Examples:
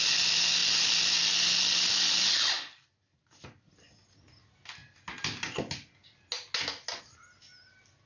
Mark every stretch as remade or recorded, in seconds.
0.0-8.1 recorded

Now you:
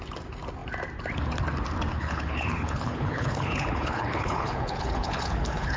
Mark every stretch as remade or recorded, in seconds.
0.0-1.9 recorded; 1.9-5.8 remade